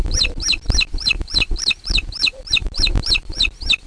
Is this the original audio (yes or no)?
no